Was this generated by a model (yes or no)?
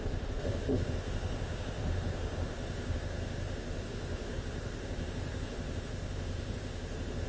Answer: yes